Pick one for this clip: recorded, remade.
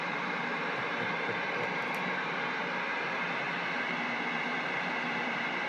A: remade